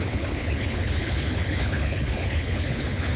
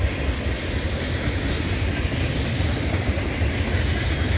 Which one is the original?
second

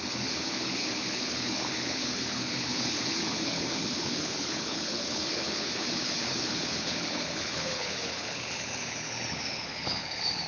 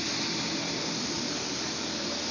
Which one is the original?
second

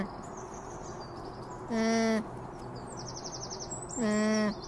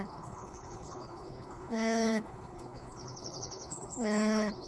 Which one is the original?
first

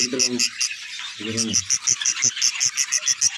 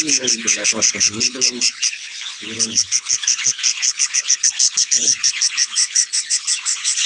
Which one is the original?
first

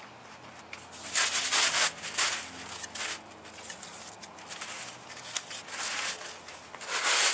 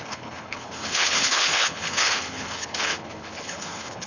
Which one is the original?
first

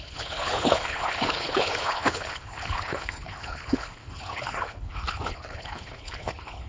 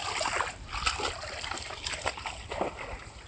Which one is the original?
second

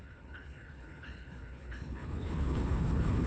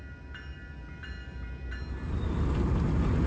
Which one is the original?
second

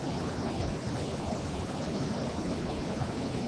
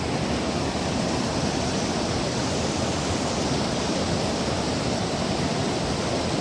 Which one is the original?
second